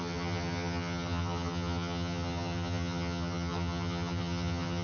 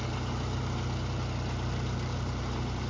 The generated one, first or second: first